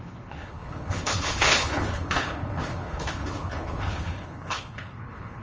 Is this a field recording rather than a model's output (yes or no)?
no